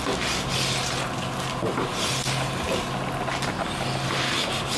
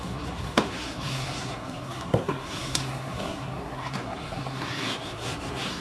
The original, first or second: first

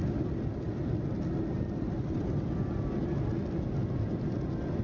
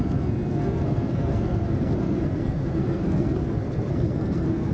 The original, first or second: first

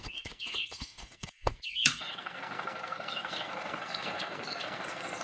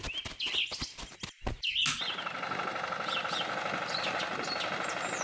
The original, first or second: second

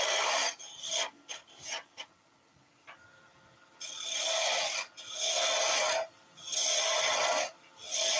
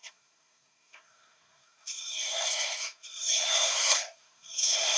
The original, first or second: first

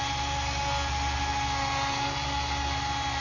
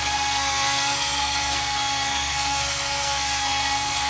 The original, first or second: first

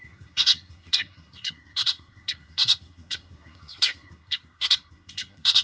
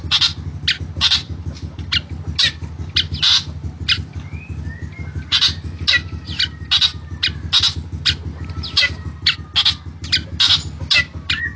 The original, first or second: second